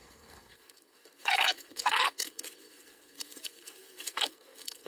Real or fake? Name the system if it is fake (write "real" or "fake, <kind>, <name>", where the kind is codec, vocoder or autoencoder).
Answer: fake, codec, SNAC